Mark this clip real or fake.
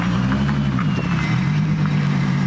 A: real